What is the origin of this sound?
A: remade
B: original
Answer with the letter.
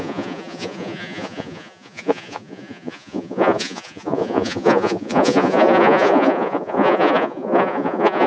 A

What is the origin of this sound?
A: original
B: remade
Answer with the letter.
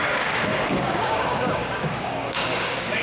B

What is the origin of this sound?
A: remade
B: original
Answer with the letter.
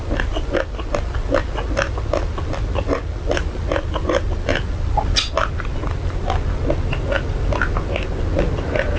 B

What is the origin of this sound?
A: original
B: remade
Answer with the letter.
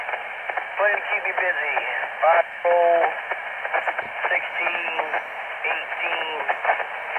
A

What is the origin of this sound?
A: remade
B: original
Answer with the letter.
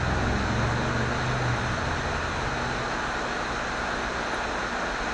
B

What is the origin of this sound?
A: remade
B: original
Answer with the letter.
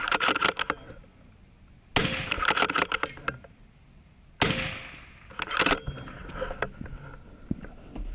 B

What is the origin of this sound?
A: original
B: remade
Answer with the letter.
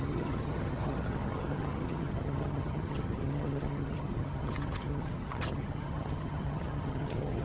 B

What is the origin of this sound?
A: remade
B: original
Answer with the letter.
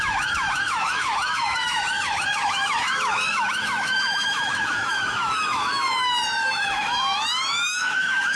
A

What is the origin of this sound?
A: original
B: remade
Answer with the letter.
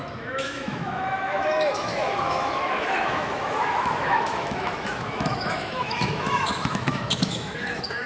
B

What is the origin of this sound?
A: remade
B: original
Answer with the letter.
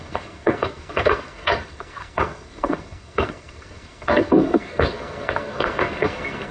A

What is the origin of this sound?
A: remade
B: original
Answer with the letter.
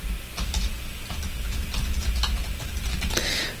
B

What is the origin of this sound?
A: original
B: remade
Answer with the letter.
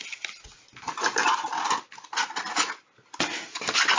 A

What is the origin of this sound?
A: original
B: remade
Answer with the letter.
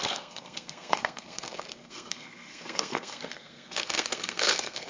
B